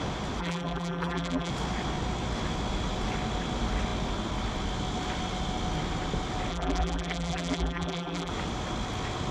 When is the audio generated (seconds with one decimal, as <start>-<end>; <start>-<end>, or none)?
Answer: 0.4-1.5; 6.5-8.3